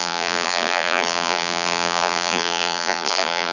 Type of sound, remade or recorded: remade